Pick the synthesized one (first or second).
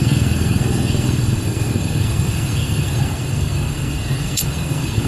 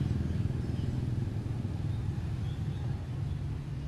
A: first